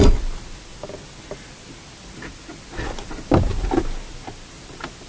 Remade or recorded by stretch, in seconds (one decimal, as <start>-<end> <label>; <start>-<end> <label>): 0.0-5.1 recorded